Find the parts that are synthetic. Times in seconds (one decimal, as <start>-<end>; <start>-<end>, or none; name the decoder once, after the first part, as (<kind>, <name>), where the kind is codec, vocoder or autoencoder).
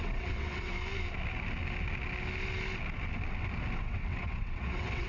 0.0-0.7 (vocoder, WaveNeXt); 3.8-5.1